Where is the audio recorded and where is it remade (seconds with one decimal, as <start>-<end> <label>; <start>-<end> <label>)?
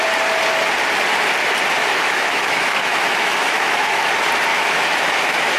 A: 0.0-1.8 recorded; 1.8-4.1 remade; 4.1-4.5 recorded; 4.5-5.6 remade